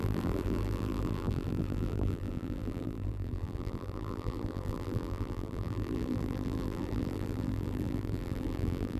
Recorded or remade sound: remade